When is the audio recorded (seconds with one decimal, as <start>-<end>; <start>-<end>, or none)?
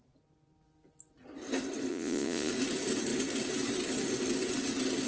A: 0.0-1.9; 2.5-5.1